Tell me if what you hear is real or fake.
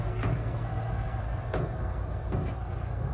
fake